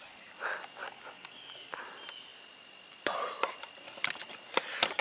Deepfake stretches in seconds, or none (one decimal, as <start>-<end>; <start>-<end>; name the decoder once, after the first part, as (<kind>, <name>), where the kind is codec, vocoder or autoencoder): 0.8-1.8 (codec, DAC)